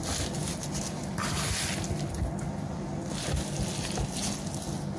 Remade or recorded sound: recorded